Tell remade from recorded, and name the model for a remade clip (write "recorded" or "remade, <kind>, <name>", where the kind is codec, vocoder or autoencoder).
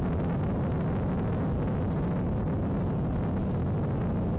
recorded